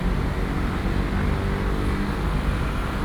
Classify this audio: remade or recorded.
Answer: recorded